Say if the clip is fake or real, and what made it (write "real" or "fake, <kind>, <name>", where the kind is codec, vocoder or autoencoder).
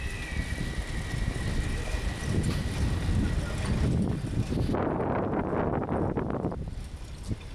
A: real